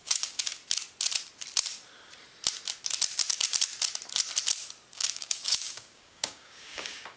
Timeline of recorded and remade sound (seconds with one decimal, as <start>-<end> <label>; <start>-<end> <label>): 0.0-0.6 remade; 0.6-4.9 recorded; 4.9-7.2 remade